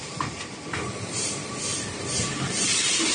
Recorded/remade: remade